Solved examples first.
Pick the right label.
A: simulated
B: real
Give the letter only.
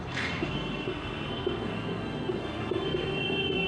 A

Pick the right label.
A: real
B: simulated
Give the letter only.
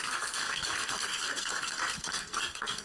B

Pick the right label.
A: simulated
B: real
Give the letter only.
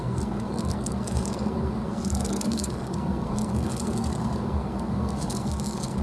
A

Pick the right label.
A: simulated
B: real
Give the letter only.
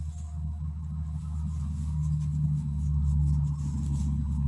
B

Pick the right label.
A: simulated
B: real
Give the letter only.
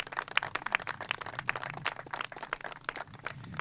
B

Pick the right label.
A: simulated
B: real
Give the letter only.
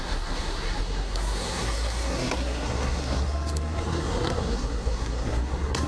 A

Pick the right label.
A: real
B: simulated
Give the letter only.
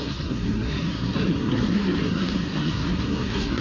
B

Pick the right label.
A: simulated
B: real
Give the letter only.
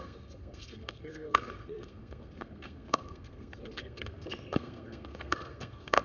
A